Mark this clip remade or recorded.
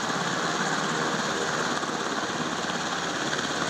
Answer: recorded